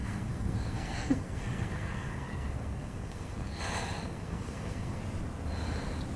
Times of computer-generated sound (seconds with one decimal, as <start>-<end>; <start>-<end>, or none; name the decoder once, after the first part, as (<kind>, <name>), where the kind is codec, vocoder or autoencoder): 0.0-3.6 (codec, SNAC); 4.0-5.0